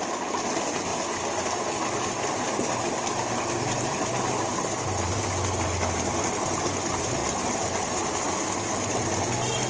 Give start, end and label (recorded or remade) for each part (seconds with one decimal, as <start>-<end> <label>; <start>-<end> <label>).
0.0-9.7 recorded